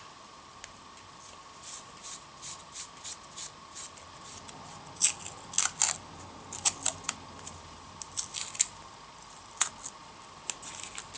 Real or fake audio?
real